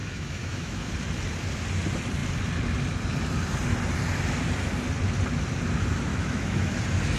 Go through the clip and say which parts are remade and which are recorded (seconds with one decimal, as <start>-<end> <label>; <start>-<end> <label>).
0.0-0.9 remade; 0.9-6.1 recorded; 6.1-6.8 remade; 6.8-7.2 recorded